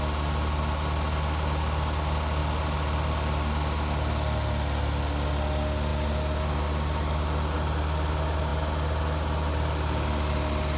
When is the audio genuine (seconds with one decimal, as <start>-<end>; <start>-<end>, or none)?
0.0-10.8